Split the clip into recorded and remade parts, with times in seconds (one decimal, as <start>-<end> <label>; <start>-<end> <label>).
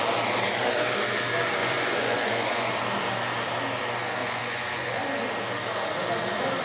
0.0-1.6 recorded; 1.6-2.7 remade; 2.7-4.2 recorded; 4.2-5.0 remade; 5.0-6.6 recorded